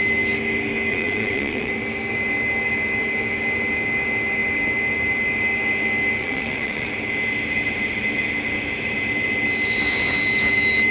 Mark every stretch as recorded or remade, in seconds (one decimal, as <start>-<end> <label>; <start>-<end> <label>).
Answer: 0.0-0.9 recorded; 0.9-1.7 remade; 1.7-6.2 recorded; 6.2-6.9 remade; 6.9-10.9 recorded